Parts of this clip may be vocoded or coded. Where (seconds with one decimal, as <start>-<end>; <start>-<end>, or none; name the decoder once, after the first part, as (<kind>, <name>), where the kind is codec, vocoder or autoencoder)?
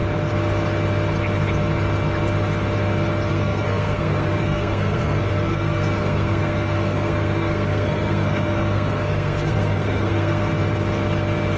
3.3-10.5 (codec, SNAC)